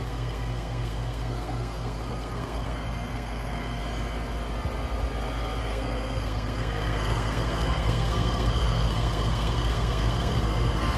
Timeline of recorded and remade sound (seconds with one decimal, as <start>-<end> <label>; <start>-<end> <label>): 0.0-3.8 remade; 3.8-5.6 recorded; 5.6-11.0 remade